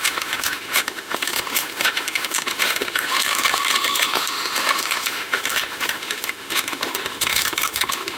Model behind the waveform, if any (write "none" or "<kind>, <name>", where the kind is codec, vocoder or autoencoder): autoencoder, DAC-VAE